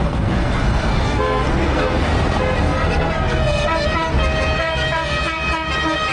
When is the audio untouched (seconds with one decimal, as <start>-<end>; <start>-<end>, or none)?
2.1-2.6; 3.7-6.1